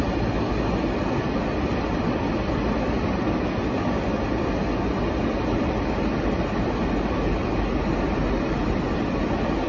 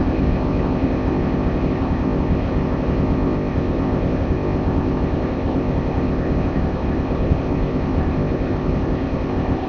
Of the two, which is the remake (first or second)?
second